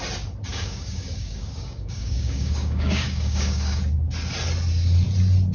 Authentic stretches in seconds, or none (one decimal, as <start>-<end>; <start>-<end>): 0.0-0.5; 3.8-5.5